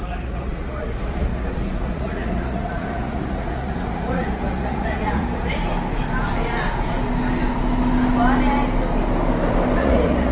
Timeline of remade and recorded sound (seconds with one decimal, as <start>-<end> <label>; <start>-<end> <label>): 0.0-5.6 remade; 5.6-9.8 recorded; 9.8-10.3 remade